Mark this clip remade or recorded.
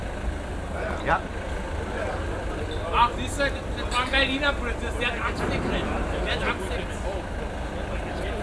recorded